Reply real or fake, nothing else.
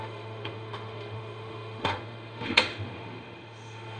fake